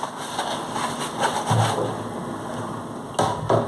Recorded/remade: recorded